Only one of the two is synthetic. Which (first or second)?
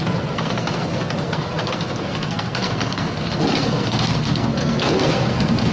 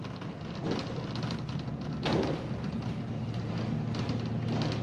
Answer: first